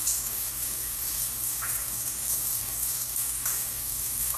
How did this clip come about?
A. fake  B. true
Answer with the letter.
A